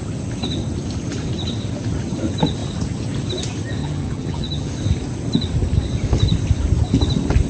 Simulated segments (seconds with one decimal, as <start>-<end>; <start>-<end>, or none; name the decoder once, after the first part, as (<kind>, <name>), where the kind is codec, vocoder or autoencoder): 3.8-4.7 (vocoder, HiFi-GAN)

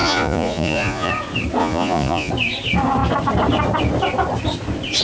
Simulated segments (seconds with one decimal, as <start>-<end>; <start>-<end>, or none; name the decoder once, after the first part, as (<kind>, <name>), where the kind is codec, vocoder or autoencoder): 0.0-1.1 (vocoder, Vocos); 1.6-2.3